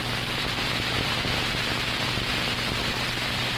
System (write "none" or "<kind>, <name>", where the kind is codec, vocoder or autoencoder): none